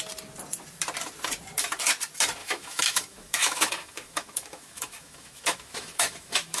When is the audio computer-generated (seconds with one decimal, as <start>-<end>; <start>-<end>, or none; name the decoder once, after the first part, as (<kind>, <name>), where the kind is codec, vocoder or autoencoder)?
2.4-6.6 (autoencoder, DAC-VAE)